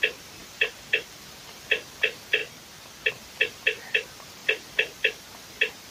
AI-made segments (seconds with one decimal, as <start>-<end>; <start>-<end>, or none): none